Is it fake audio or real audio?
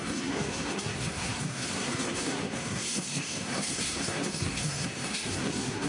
fake